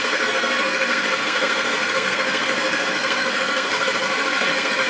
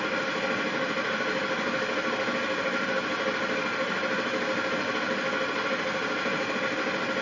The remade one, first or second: first